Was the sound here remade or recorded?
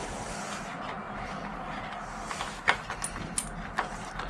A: recorded